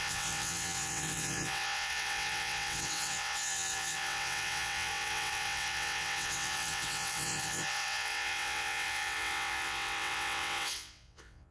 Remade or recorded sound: remade